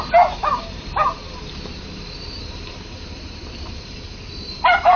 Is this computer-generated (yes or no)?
yes